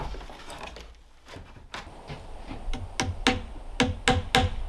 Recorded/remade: recorded